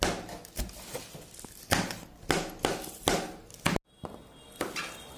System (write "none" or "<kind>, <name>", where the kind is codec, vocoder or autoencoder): none